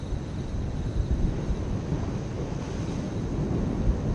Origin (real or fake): real